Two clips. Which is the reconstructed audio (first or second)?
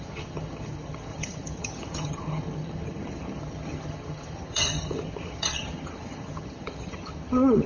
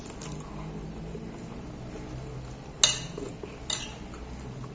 first